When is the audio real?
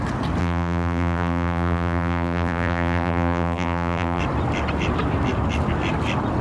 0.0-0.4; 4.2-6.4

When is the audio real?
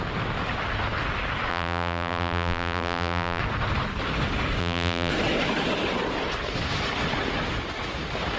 0.0-1.5; 3.4-4.6; 5.1-8.4